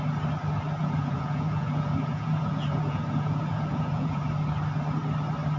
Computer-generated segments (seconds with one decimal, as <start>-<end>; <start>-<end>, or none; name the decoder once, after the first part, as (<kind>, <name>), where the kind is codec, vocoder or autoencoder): 0.8-4.2 (vocoder, Vocos)

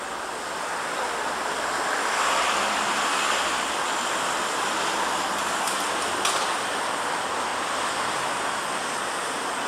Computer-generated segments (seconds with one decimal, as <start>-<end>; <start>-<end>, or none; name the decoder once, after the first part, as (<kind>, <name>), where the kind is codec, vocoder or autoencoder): none

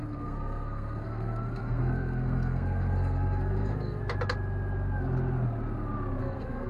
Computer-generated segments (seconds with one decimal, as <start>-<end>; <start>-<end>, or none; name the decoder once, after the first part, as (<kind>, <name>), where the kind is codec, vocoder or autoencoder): 0.0-4.0 (codec, SNAC); 6.2-6.7

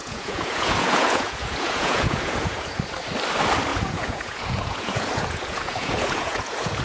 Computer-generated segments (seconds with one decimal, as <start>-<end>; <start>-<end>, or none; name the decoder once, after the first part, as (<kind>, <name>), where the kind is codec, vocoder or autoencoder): 0.0-2.8 (vocoder, Vocos); 3.7-6.8

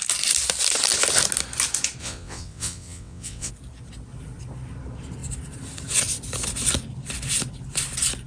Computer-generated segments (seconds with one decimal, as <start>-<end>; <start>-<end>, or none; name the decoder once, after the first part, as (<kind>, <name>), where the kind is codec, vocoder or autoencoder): 2.0-3.5 (vocoder, WaveNeXt)

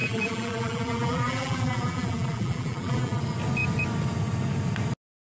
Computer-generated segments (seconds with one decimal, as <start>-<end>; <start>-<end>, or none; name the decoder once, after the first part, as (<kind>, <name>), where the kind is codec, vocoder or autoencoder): 0.0-3.2 (vocoder, BigVGAN v2)

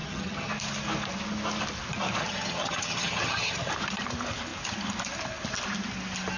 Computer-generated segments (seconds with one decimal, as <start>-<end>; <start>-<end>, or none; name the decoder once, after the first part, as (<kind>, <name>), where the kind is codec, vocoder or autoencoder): 0.0-0.5 (vocoder, HiFi-GAN); 2.2-3.7

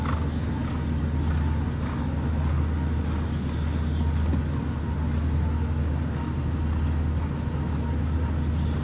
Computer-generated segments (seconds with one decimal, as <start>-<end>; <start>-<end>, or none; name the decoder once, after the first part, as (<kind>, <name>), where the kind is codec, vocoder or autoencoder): none